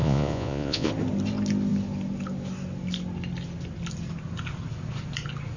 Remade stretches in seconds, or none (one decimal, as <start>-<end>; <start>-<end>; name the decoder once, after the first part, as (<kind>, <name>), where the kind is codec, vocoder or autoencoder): 0.0-0.9 (vocoder, Vocos)